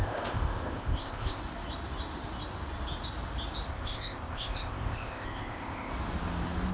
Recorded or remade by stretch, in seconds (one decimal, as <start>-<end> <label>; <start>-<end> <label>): 0.0-1.4 remade; 1.4-3.7 recorded; 3.7-5.9 remade; 5.9-6.7 recorded